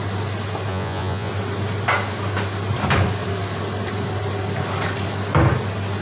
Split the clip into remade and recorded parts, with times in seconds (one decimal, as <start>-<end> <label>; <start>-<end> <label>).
0.0-0.7 recorded; 0.7-1.3 remade; 1.3-6.0 recorded